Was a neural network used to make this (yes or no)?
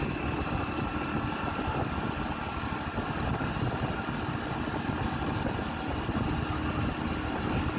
no